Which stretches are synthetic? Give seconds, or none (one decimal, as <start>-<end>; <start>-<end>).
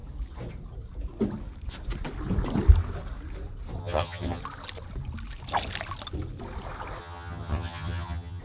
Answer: 3.8-4.4; 7.0-8.4